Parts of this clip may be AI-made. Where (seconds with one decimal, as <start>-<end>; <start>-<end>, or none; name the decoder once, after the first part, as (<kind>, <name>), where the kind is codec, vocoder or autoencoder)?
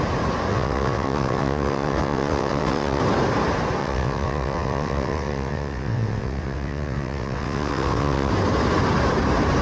0.5-3.0 (vocoder, WaveNeXt); 3.8-8.3